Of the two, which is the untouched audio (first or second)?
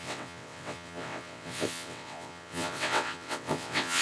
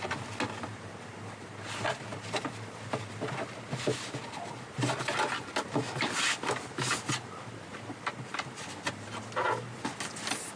second